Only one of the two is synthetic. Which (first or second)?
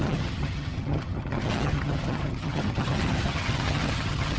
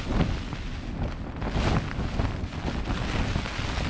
first